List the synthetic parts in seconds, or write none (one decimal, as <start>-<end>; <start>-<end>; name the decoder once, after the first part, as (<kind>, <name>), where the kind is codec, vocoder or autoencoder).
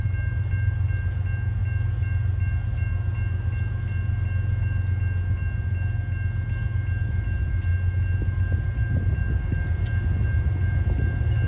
none